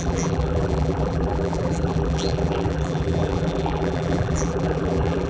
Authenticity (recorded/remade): remade